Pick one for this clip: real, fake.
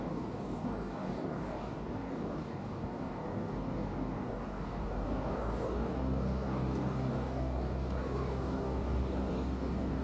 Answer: fake